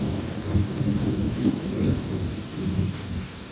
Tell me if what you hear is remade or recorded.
remade